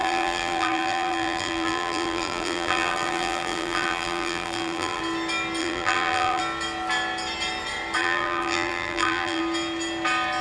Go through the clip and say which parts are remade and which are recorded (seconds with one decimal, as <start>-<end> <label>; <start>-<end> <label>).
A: 0.0-5.0 remade; 5.0-5.6 recorded; 5.6-6.4 remade; 6.4-8.0 recorded; 8.0-9.4 remade; 9.4-10.4 recorded